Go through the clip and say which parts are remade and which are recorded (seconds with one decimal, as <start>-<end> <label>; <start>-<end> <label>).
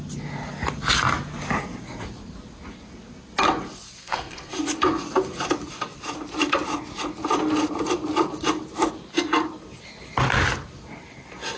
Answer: 0.0-4.0 recorded; 4.0-4.5 remade; 4.5-11.6 recorded